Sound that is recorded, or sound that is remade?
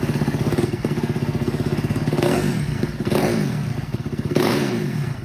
remade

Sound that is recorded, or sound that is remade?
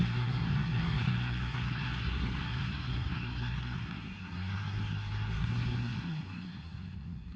remade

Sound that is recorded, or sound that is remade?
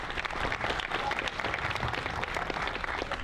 recorded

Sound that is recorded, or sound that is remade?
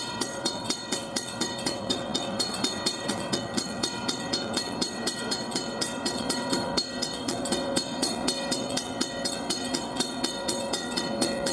remade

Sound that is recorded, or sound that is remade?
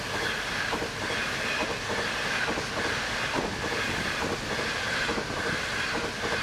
recorded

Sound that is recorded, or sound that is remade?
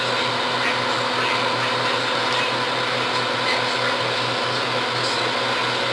recorded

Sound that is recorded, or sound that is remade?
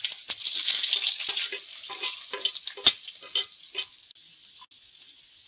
recorded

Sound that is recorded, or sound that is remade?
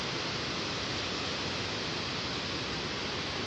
recorded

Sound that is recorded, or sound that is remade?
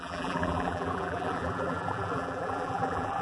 remade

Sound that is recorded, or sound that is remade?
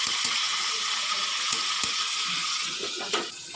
remade